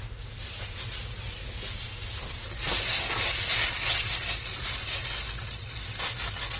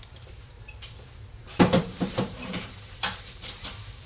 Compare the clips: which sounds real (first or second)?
first